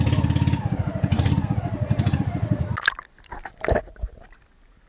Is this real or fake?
real